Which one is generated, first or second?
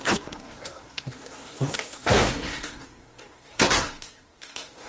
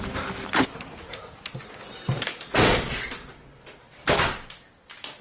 first